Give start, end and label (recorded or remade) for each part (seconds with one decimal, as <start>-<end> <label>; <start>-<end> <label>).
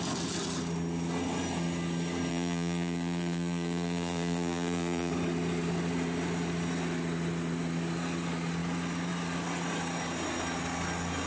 0.0-2.3 recorded; 2.3-5.1 remade; 5.1-11.3 recorded